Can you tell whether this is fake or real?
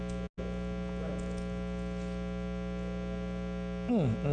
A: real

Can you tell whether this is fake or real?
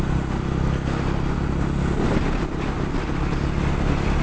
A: real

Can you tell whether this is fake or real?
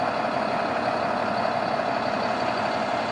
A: fake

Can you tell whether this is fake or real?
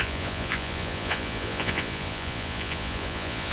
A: fake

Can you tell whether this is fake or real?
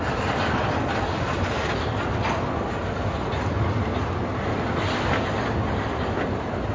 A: real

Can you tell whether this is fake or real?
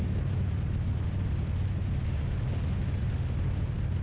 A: real